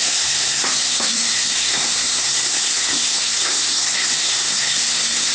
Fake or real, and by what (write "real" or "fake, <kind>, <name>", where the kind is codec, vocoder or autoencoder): fake, codec, SNAC